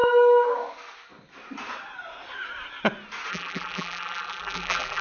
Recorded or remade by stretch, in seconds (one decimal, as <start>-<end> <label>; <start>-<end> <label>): 0.0-3.3 recorded; 3.3-5.0 remade